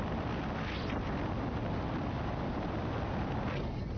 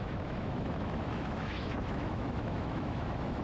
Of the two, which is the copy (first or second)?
second